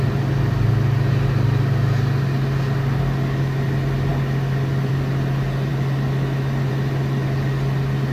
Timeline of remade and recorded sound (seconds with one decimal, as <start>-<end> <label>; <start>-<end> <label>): 0.0-8.1 recorded

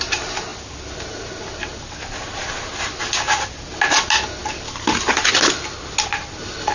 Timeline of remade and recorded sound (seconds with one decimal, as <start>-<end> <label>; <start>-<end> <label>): 0.0-6.7 recorded

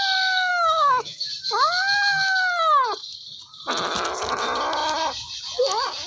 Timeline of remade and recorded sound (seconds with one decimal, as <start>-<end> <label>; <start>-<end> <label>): 0.0-0.5 recorded; 0.5-1.3 remade; 1.3-6.1 recorded